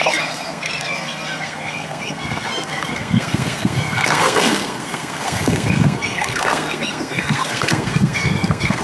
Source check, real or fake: fake